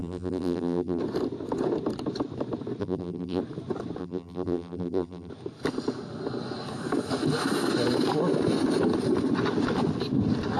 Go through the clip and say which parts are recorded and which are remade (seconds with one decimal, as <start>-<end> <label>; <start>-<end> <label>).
0.0-1.0 remade; 1.0-2.8 recorded; 2.8-3.4 remade; 3.4-4.0 recorded; 4.0-5.3 remade; 5.3-10.6 recorded